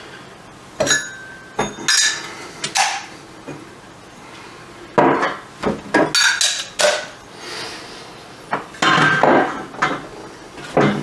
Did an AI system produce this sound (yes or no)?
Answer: no